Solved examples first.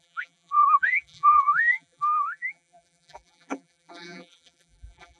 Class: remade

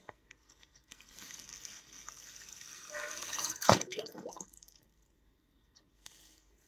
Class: remade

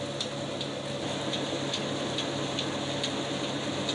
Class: recorded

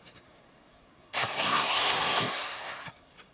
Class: remade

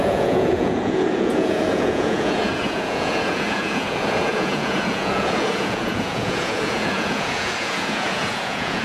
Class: remade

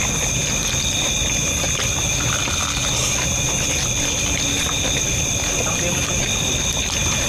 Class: recorded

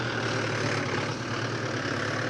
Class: recorded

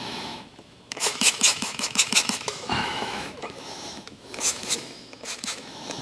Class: remade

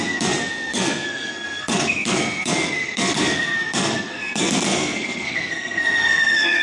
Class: remade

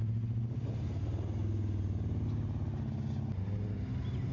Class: recorded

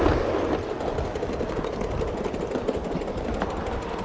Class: recorded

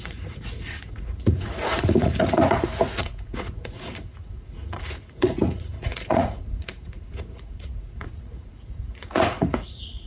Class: remade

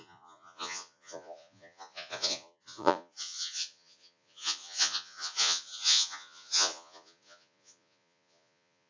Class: remade